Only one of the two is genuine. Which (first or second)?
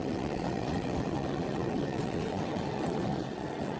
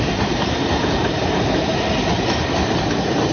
second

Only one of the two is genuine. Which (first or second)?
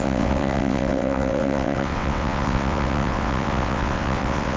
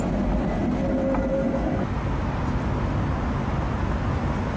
second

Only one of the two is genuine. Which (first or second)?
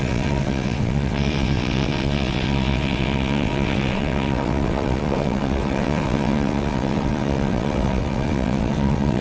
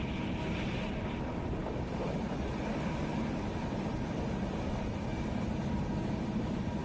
second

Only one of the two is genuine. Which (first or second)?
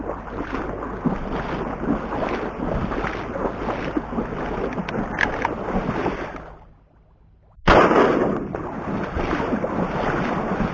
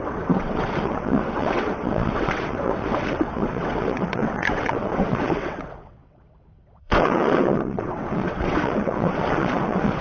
first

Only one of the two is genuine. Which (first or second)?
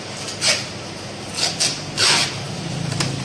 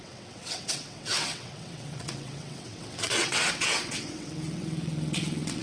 first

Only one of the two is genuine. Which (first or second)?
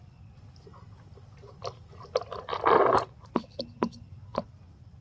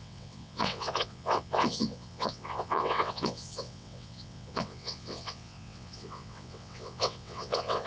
first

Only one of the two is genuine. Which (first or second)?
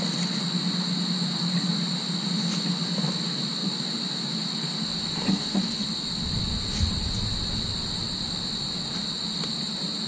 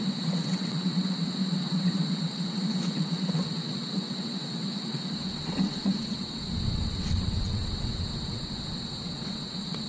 first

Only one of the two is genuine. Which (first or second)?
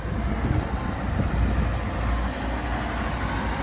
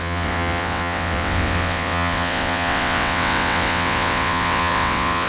first